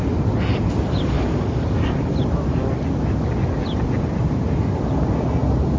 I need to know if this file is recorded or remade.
recorded